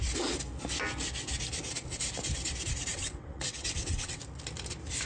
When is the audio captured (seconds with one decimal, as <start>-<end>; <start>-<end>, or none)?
0.0-2.9; 4.2-5.1